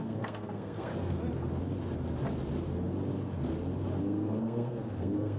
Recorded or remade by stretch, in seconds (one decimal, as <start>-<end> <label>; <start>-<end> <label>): 0.0-0.9 remade; 0.9-4.0 recorded; 4.0-5.4 remade